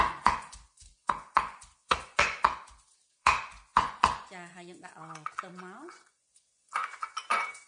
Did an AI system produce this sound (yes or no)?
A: yes